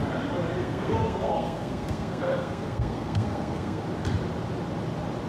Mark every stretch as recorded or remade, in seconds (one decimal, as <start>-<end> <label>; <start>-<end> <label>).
0.0-0.6 recorded; 0.6-3.8 remade; 3.8-5.3 recorded